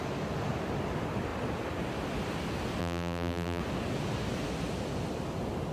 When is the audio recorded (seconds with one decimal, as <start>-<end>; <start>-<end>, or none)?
0.0-2.8; 3.6-5.7